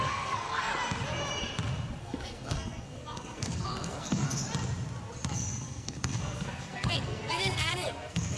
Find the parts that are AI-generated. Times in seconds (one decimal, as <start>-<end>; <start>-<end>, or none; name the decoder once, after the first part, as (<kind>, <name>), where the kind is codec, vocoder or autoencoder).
0.0-0.7 (codec, SNAC); 2.0-4.4; 5.3-8.4